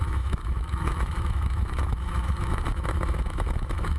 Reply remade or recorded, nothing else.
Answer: remade